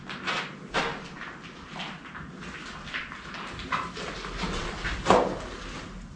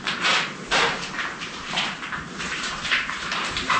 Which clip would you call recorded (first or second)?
first